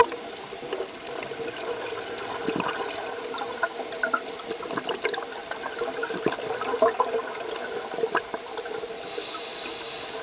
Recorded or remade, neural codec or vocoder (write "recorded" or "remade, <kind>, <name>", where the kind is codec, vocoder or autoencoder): recorded